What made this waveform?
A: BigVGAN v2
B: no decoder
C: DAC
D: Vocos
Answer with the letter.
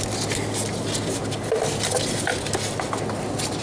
B